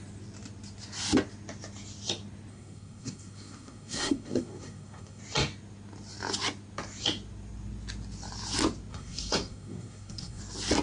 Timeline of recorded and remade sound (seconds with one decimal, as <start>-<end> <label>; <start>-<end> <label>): 0.0-2.5 recorded; 2.5-5.2 remade; 5.2-8.9 recorded; 8.9-10.4 remade; 10.4-10.8 recorded